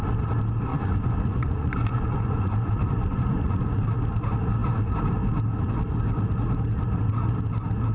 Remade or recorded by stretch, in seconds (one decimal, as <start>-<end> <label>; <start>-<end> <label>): 0.0-0.7 recorded; 0.7-2.7 remade; 2.7-3.1 recorded; 3.1-3.8 remade; 3.8-7.9 recorded